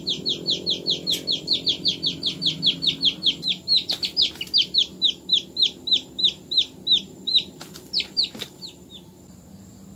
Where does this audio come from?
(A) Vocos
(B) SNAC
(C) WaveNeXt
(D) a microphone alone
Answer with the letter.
D